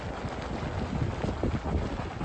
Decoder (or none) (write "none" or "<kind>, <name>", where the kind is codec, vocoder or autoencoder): none